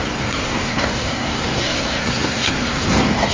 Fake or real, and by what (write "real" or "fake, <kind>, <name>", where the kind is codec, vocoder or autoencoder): fake, codec, SNAC